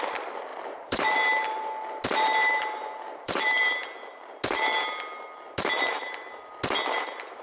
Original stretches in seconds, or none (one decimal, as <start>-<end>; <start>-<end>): 0.0-0.5; 1.2-2.4; 3.7-7.4